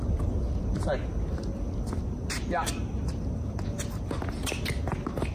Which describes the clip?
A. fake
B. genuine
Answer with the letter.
B